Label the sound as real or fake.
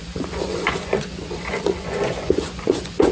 fake